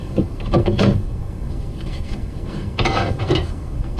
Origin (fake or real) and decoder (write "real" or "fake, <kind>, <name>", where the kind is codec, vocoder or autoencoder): fake, codec, SNAC